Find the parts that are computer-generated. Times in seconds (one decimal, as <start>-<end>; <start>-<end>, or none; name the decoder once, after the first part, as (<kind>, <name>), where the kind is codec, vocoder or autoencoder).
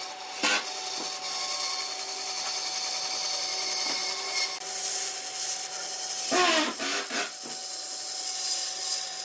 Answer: none